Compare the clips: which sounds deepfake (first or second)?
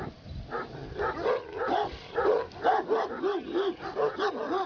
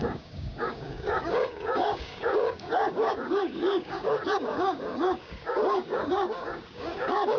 second